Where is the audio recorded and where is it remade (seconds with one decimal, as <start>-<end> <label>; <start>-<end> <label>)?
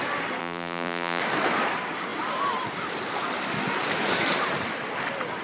0.0-0.4 recorded; 0.4-1.2 remade; 1.2-5.4 recorded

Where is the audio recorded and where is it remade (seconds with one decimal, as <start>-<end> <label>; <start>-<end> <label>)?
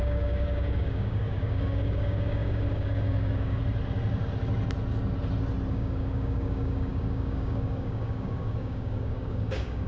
0.0-3.6 remade; 3.6-5.7 recorded; 5.7-9.9 remade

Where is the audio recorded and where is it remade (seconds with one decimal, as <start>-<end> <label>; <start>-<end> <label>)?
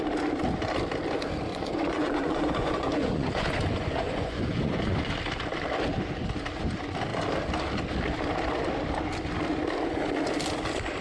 0.0-1.5 recorded; 1.5-5.1 remade; 5.1-11.0 recorded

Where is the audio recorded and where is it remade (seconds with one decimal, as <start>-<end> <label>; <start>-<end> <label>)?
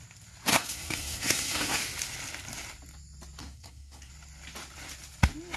0.0-0.5 recorded; 0.5-1.8 remade; 1.8-3.4 recorded; 3.4-4.1 remade; 4.1-5.6 recorded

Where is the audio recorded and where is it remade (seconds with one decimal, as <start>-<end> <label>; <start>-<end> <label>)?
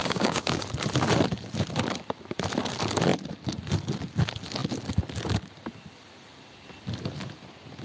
0.0-0.6 remade; 0.6-7.8 recorded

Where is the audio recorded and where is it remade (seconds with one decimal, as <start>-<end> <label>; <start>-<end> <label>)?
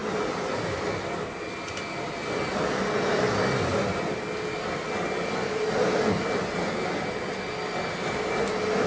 0.0-8.9 recorded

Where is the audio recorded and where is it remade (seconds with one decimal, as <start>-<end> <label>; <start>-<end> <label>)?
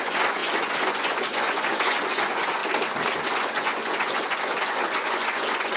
0.0-2.6 remade; 2.6-3.2 recorded; 3.2-5.8 remade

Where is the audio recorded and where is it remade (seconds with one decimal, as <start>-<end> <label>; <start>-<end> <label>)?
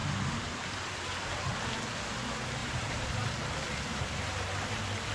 0.0-2.6 recorded; 2.6-3.3 remade; 3.3-3.9 recorded; 3.9-4.5 remade; 4.5-5.1 recorded